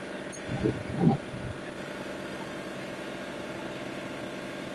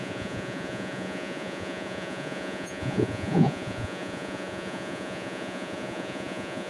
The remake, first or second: second